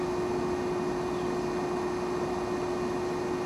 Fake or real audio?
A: real